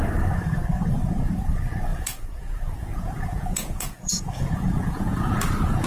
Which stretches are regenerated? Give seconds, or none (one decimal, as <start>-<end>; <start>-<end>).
1.9-5.4